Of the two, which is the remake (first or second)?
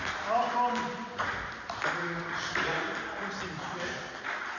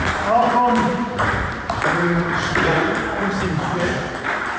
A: second